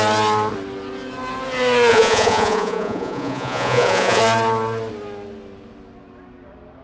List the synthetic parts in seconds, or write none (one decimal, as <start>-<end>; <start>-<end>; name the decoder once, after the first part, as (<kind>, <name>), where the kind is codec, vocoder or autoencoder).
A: 1.9-4.2 (vocoder, Vocos)